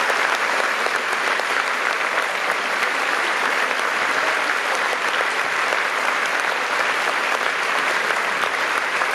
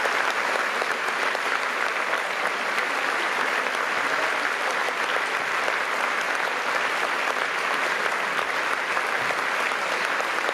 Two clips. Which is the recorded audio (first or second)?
second